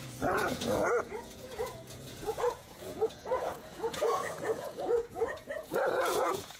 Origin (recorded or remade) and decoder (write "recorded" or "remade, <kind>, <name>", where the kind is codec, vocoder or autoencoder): remade, vocoder, Vocos